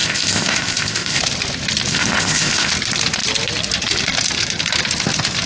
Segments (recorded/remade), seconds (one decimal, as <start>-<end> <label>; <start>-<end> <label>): 0.0-1.2 remade; 1.2-1.9 recorded; 1.9-2.7 remade; 2.7-5.5 recorded